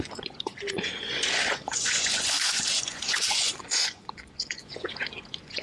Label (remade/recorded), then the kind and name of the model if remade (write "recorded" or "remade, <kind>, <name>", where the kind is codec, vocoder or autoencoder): remade, vocoder, Vocos